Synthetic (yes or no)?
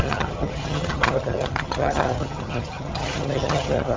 yes